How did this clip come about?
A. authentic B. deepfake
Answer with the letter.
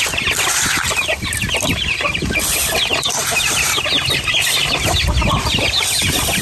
A